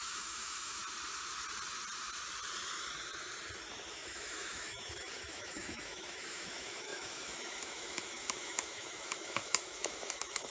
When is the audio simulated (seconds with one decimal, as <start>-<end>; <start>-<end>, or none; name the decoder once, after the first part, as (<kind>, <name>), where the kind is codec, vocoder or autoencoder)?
0.0-0.8 (autoencoder, DAC-VAE); 3.9-10.5